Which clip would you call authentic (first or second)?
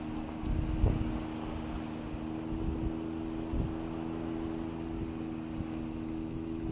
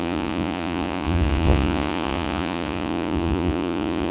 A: first